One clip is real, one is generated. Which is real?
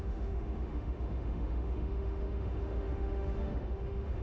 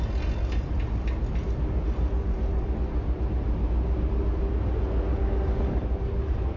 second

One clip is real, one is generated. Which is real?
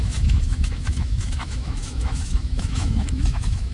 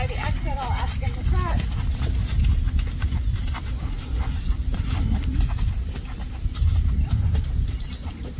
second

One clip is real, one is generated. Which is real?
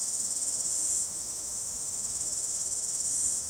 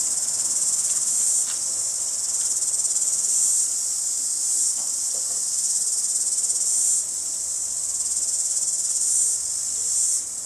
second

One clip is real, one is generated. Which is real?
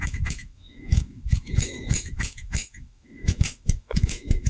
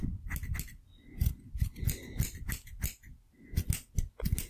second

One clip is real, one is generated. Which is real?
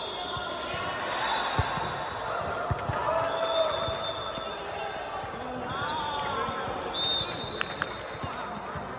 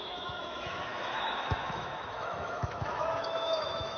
first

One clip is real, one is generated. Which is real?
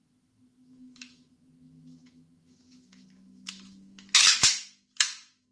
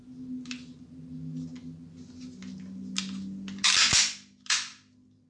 second